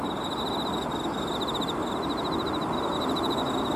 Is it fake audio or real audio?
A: real